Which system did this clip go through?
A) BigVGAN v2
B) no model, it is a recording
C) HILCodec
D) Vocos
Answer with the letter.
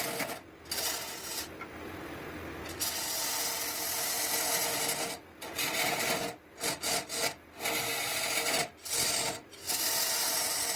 B